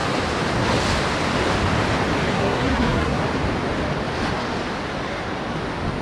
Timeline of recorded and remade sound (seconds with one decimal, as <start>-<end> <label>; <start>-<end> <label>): 0.0-2.3 recorded; 2.3-3.2 remade; 3.2-6.0 recorded